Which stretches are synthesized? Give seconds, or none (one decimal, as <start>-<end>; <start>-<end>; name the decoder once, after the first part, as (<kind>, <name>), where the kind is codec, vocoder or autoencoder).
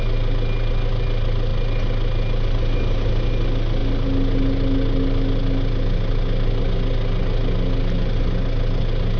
none